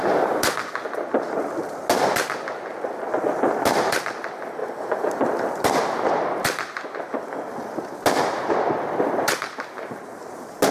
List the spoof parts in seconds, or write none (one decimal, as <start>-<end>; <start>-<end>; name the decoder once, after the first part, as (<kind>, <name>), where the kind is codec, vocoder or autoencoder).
4.6-5.8 (vocoder, BigVGAN v2)